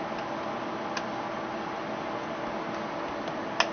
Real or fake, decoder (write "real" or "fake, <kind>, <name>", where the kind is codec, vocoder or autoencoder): real